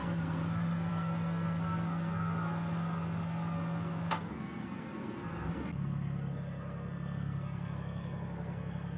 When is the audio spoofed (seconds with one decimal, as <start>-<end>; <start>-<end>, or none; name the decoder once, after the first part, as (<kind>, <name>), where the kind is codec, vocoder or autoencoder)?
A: 0.0-9.0 (codec, SNAC)